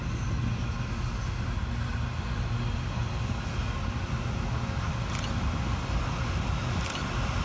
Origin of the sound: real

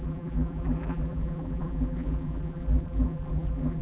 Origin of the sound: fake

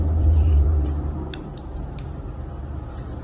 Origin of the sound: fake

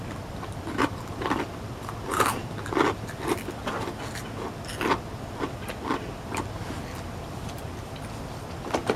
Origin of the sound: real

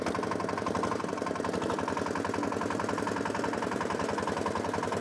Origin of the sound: real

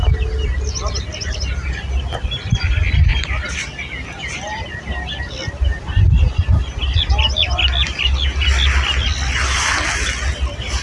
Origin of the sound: real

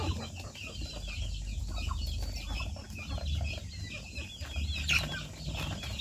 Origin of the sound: real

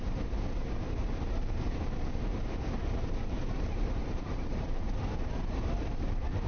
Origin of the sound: fake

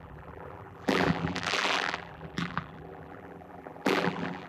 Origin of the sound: fake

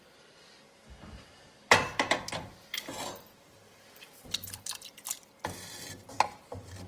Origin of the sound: fake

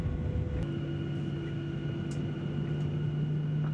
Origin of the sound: real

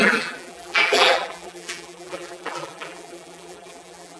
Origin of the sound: fake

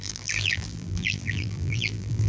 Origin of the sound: fake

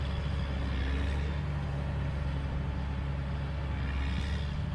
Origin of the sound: real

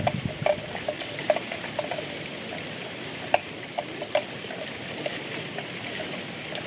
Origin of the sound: fake